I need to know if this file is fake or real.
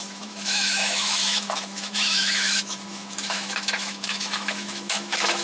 fake